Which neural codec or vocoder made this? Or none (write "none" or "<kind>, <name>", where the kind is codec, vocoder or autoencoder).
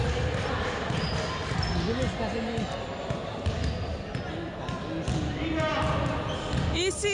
none